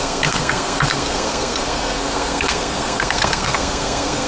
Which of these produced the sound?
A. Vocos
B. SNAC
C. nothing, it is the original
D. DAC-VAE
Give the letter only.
B